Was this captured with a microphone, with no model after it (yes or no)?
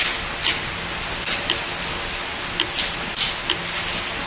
yes